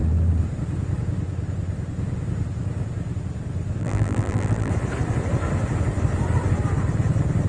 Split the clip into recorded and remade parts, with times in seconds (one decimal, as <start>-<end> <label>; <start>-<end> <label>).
0.0-3.8 recorded; 3.8-4.7 remade; 4.7-7.5 recorded